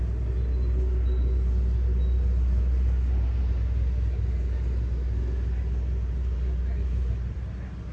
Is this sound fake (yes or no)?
no